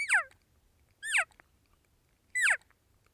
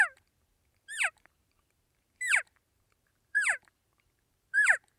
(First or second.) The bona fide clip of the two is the first